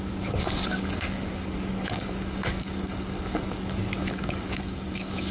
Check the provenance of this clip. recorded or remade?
remade